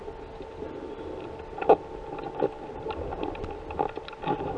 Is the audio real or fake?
real